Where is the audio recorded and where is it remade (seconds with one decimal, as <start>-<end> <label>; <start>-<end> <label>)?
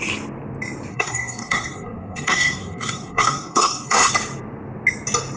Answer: 0.0-0.9 recorded; 0.9-4.1 remade; 4.1-5.4 recorded